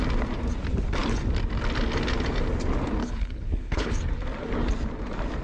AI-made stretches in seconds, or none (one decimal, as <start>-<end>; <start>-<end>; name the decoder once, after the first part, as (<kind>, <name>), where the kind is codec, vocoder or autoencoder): 3.0-3.9 (codec, HILCodec)